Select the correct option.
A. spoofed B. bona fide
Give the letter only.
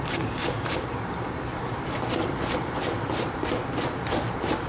A